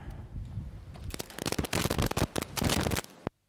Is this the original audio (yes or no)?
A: yes